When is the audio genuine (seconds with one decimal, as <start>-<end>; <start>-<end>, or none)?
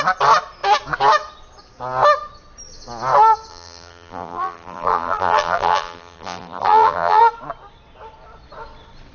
0.0-3.5; 7.2-9.1